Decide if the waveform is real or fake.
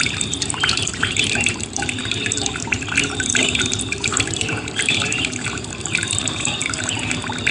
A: fake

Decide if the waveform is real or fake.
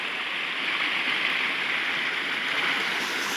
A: real